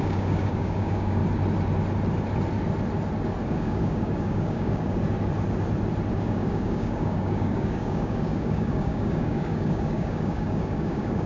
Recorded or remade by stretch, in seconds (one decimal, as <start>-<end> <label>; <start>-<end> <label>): 0.0-1.2 remade; 1.2-3.5 recorded; 3.5-5.0 remade; 5.0-6.1 recorded; 6.1-11.3 remade